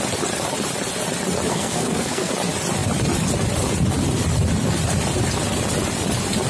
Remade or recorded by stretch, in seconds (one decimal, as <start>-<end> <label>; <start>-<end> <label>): 0.0-1.5 recorded; 1.5-2.3 remade; 2.3-6.5 recorded